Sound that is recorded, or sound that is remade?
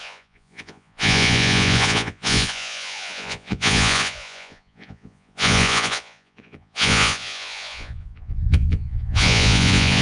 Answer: remade